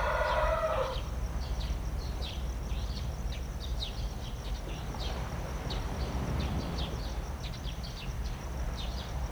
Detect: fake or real fake